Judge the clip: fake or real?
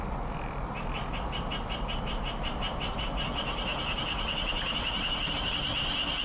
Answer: real